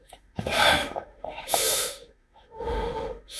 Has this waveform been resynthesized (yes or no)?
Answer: yes